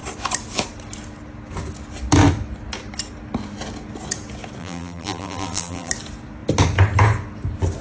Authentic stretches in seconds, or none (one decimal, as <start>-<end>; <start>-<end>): 0.0-4.6; 5.9-7.8